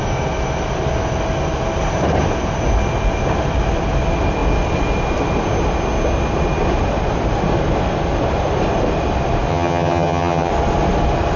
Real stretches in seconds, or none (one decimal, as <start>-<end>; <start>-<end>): 0.0-9.5; 10.5-11.4